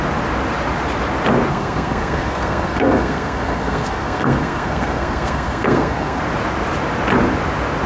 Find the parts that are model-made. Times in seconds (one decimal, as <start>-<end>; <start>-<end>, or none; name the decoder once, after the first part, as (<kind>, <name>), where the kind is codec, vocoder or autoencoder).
1.5-6.2 (codec, SNAC)